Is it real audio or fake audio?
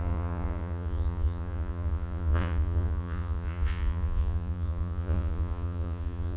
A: fake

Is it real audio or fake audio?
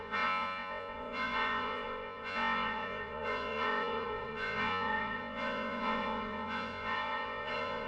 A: fake